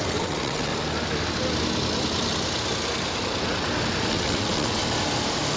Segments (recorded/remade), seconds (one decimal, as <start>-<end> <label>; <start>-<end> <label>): 0.0-0.7 remade; 0.7-4.1 recorded; 4.1-4.8 remade; 4.8-5.6 recorded